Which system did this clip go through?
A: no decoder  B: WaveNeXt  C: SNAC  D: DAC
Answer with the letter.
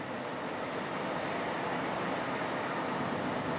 A